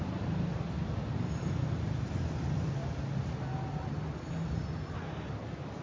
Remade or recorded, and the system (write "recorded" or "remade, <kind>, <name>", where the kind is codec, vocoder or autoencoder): recorded